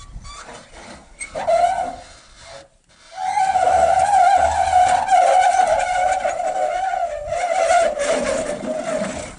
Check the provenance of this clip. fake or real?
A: real